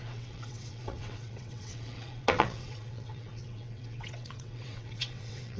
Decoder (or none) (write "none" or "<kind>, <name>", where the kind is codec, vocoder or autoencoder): vocoder, WaveNeXt